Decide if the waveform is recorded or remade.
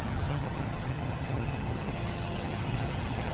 remade